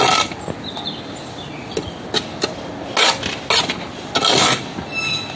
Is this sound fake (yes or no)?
no